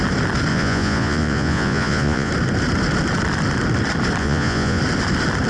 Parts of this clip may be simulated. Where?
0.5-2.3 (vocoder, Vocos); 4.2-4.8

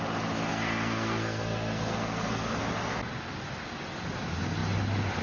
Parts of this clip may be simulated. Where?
0.5-2.6 (codec, SNAC)